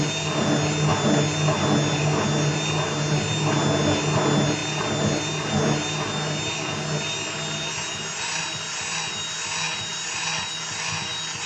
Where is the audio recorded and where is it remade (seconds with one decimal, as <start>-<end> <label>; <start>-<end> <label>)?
0.0-11.5 recorded